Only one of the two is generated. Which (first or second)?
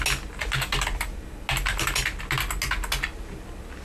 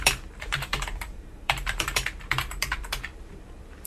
second